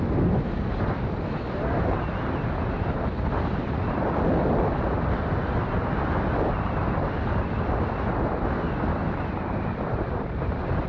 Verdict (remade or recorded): recorded